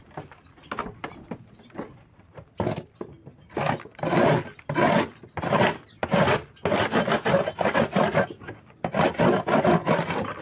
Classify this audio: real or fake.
real